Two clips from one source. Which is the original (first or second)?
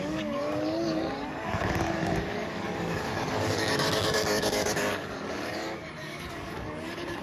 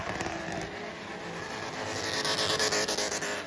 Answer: second